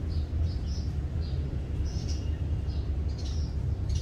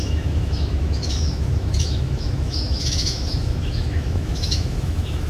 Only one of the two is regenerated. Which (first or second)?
second